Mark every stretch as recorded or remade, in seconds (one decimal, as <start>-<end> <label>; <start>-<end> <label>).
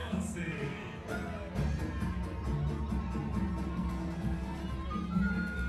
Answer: 0.0-0.8 remade; 0.8-3.7 recorded; 3.7-4.6 remade; 4.6-5.3 recorded; 5.3-5.7 remade